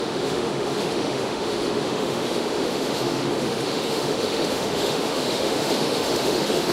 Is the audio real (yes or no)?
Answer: no